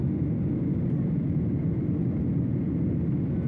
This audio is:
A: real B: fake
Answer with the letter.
A